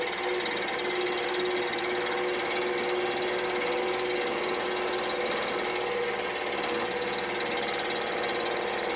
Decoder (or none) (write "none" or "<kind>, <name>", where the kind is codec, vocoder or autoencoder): none